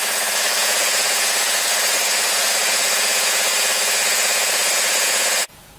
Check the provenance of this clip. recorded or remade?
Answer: remade